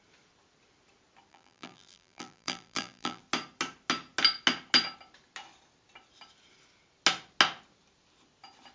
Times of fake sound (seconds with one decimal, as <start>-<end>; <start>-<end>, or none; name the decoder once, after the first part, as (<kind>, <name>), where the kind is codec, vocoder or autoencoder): 1.3-3.2 (vocoder, BigVGAN v2)